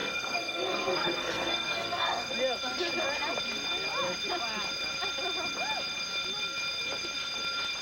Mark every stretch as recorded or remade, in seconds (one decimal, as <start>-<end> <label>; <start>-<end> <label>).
0.0-2.3 remade; 2.3-7.8 recorded